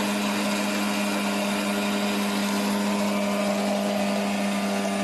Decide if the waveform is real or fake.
real